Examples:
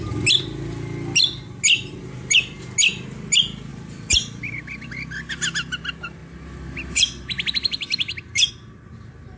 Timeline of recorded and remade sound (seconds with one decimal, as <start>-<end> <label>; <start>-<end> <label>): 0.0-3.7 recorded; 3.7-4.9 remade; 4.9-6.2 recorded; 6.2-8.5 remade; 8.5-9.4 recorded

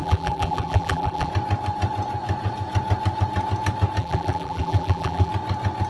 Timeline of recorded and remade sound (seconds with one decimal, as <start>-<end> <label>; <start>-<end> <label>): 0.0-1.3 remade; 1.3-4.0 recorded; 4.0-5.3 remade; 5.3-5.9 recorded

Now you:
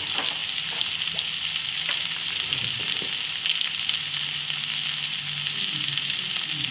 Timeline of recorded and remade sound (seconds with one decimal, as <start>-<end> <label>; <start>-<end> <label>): 0.0-6.7 recorded

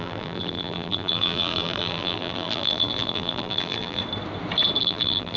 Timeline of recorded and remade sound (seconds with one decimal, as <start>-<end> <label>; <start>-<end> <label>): 0.0-4.0 remade; 4.0-4.8 recorded; 4.8-5.4 remade

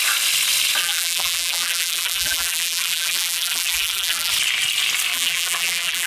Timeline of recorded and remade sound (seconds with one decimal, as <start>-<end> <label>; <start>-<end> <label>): 0.0-0.8 recorded; 0.8-4.3 remade; 4.3-5.1 recorded; 5.1-6.1 remade

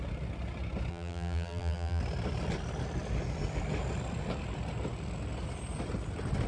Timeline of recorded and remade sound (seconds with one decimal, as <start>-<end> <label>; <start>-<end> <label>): 0.0-0.9 recorded; 0.9-2.0 remade; 2.0-6.5 recorded

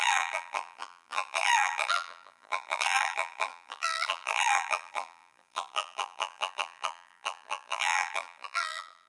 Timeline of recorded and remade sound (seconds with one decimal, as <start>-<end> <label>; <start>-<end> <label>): 0.0-9.1 remade